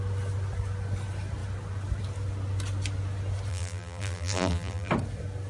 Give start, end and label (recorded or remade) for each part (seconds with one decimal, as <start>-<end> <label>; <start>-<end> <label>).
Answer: 0.0-3.5 recorded; 3.5-4.9 remade; 4.9-5.5 recorded